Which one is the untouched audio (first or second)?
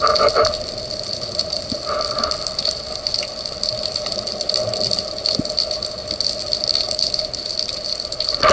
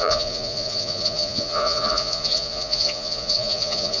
first